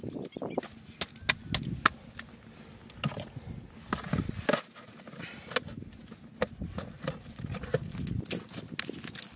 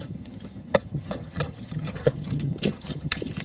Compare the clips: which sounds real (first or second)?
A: first